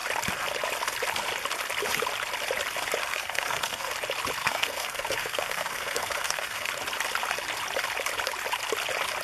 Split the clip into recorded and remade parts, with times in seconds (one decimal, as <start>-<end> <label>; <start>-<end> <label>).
0.0-3.0 recorded; 3.0-3.9 remade; 3.9-4.4 recorded; 4.4-6.7 remade; 6.7-9.2 recorded

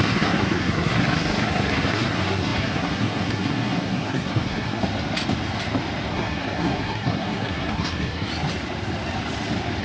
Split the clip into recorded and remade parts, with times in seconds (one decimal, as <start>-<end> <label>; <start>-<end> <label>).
0.0-4.8 remade; 4.8-6.1 recorded; 6.1-8.3 remade; 8.3-9.8 recorded